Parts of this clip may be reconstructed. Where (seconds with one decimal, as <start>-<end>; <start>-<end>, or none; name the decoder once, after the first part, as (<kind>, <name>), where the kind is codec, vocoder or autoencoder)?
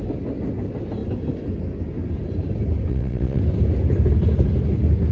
2.9-3.4 (vocoder, WaveNeXt)